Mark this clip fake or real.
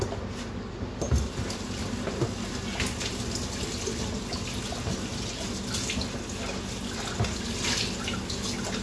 real